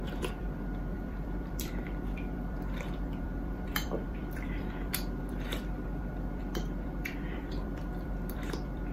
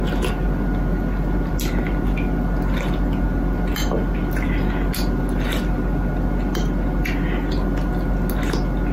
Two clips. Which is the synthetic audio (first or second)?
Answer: first